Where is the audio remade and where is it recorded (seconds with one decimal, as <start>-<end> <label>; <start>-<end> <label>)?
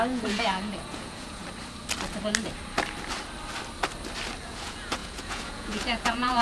0.0-1.4 remade; 1.4-4.4 recorded; 4.4-6.4 remade